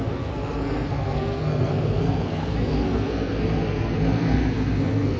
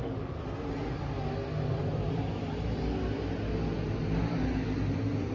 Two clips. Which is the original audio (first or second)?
second